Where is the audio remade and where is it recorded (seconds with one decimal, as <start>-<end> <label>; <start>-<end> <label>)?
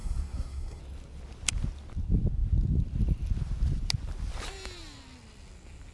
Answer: 0.0-0.8 remade; 0.8-5.9 recorded